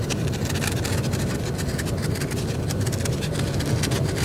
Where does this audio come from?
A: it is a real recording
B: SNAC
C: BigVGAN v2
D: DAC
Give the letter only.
A